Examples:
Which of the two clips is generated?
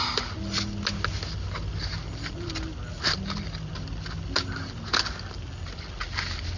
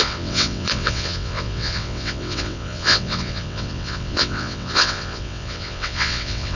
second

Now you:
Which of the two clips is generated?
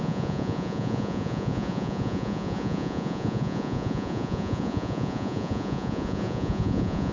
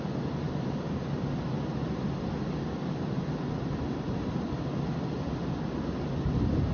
first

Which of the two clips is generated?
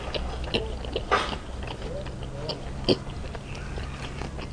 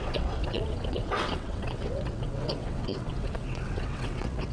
second